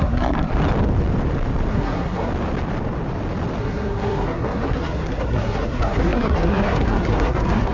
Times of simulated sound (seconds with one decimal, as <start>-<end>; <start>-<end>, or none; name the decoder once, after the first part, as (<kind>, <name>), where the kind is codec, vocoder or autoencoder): 0.0-0.5 (codec, SNAC); 1.7-2.3; 3.6-7.7